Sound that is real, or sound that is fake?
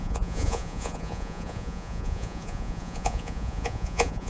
fake